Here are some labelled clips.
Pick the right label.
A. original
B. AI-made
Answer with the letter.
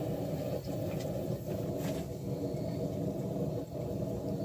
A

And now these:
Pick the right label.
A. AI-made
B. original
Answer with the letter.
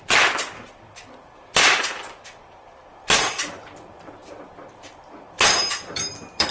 A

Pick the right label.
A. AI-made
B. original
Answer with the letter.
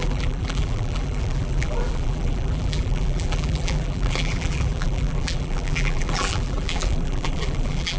A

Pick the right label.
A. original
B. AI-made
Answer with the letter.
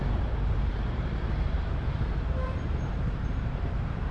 B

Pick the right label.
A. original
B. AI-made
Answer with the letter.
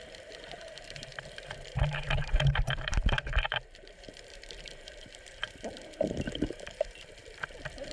B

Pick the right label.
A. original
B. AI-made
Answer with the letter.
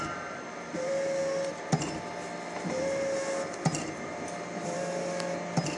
A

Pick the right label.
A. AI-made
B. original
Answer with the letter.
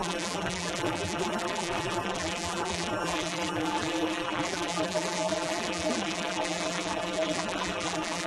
A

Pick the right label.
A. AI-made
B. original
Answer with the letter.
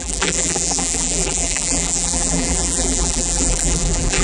A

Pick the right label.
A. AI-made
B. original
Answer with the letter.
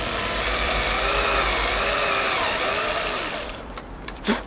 A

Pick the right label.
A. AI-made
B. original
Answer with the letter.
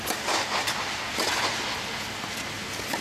B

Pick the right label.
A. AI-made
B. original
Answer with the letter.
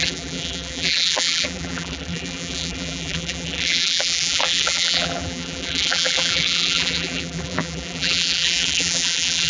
A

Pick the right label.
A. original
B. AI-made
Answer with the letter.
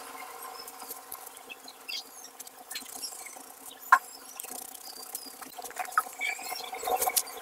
B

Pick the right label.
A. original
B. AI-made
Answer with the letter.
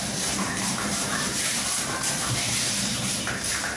B